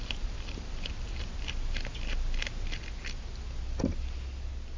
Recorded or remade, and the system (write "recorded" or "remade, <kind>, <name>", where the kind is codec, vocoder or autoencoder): recorded